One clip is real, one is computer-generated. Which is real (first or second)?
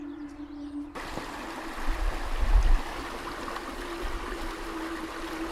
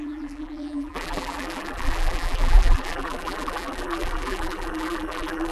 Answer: first